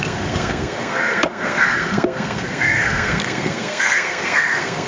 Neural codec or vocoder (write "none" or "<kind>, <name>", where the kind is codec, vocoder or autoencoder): codec, SNAC